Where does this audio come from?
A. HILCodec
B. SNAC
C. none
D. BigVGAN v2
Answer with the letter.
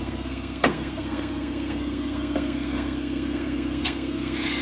B